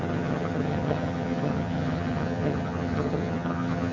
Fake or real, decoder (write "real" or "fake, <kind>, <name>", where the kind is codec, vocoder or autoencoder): fake, vocoder, HiFi-GAN